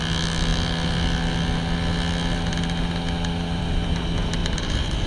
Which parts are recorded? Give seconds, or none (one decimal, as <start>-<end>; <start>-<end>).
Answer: 0.0-4.4

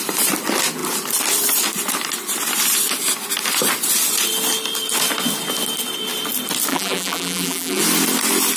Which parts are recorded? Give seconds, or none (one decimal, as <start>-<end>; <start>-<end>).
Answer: 0.0-6.7; 7.8-8.6

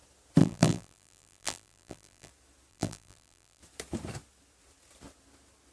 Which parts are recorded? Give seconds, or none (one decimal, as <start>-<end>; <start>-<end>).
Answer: 0.0-0.4; 2.3-2.7; 3.6-5.7

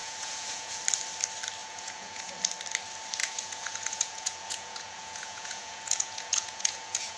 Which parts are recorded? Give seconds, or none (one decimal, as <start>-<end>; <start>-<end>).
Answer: 0.8-1.6; 2.3-3.2

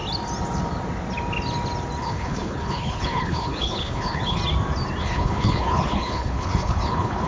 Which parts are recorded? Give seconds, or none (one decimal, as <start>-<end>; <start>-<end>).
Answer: 0.0-2.0; 4.4-5.0

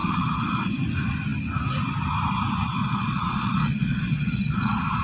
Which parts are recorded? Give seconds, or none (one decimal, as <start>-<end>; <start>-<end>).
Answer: 0.7-2.8